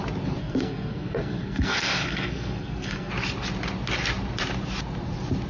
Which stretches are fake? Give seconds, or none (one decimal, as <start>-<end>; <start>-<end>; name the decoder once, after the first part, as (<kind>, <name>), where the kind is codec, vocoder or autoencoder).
0.4-3.1 (codec, SNAC)